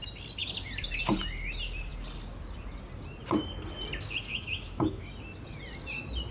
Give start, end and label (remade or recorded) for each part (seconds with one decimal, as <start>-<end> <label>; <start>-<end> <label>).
0.0-4.3 recorded; 4.3-5.0 remade; 5.0-6.3 recorded